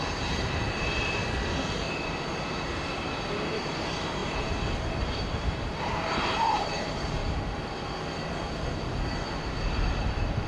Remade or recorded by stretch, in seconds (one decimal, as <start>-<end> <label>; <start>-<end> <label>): 0.0-1.2 remade; 1.2-1.9 recorded; 1.9-7.2 remade; 7.2-9.4 recorded; 9.4-10.5 remade